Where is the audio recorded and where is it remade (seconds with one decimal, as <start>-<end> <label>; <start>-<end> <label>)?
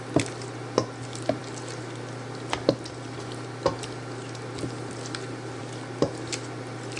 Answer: 0.0-7.0 recorded